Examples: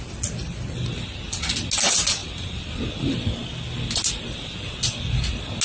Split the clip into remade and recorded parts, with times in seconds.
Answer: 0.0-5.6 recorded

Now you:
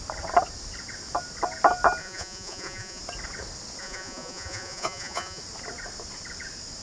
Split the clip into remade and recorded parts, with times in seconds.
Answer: 0.0-2.0 recorded; 2.0-3.0 remade; 3.0-3.8 recorded; 3.8-5.4 remade; 5.4-6.8 recorded

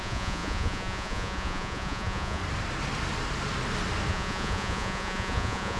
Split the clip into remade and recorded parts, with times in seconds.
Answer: 0.0-2.4 remade; 2.4-4.1 recorded; 4.1-5.8 remade

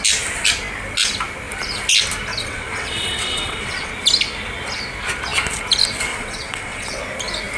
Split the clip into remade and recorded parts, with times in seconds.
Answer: 0.0-2.4 recorded; 2.4-3.9 remade; 3.9-6.1 recorded; 6.1-7.0 remade; 7.0-7.6 recorded

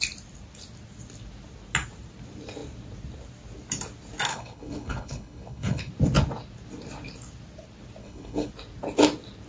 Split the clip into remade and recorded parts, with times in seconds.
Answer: 0.0-4.3 recorded; 4.3-5.9 remade; 5.9-8.0 recorded; 8.0-8.5 remade; 8.5-9.5 recorded

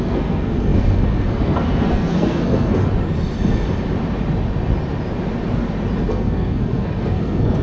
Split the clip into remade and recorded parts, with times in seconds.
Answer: 0.0-2.8 remade; 2.8-6.1 recorded; 6.1-7.6 remade

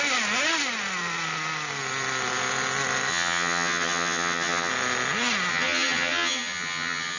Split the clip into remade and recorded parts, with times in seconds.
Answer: 0.0-3.1 recorded; 3.1-4.7 remade; 4.7-5.5 recorded; 5.5-7.2 remade

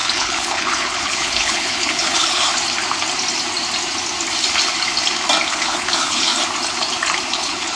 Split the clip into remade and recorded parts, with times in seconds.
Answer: 0.0-2.5 remade; 2.5-5.5 recorded; 5.5-6.3 remade; 6.3-7.3 recorded; 7.3-7.8 remade